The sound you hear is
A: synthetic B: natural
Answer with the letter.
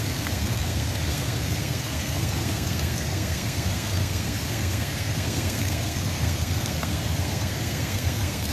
A